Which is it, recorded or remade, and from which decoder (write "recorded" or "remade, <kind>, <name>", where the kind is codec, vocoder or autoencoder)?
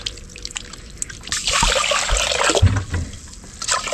recorded